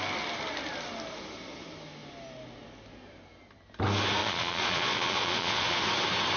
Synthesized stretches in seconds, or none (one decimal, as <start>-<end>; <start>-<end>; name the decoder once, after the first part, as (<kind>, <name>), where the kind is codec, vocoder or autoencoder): 4.2-5.8 (vocoder, Vocos)